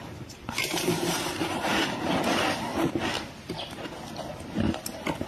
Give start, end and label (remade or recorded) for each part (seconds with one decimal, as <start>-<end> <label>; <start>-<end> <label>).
0.0-2.7 remade; 2.7-4.7 recorded; 4.7-5.3 remade